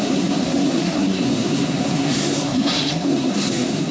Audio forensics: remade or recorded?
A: remade